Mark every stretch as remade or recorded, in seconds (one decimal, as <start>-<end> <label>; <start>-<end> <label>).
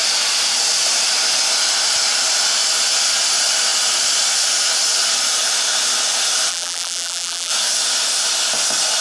0.0-6.5 recorded; 6.5-7.5 remade; 7.5-9.0 recorded